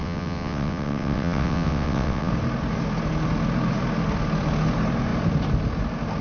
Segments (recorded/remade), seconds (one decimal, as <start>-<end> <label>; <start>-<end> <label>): 0.0-2.3 remade; 2.3-6.2 recorded

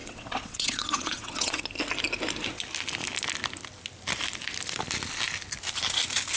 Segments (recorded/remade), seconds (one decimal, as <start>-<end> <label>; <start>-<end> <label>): 0.0-1.6 remade; 1.6-6.4 recorded

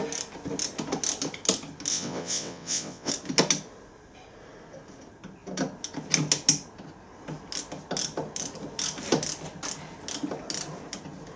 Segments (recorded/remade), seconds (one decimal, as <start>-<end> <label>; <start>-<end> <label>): 0.0-1.9 recorded; 1.9-3.1 remade; 3.1-11.4 recorded

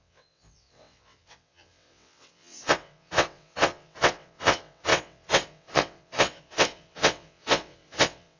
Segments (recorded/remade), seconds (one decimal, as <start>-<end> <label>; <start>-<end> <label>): 0.0-8.4 remade

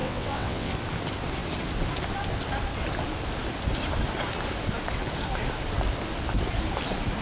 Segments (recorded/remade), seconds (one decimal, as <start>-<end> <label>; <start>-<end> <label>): 0.0-0.7 remade; 0.7-7.2 recorded

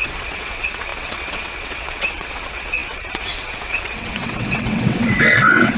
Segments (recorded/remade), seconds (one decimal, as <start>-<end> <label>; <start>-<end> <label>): 0.0-5.8 remade